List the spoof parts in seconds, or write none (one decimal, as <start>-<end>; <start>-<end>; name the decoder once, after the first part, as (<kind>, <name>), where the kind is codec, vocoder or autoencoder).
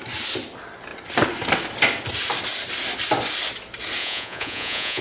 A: 4.0-5.0 (vocoder, Vocos)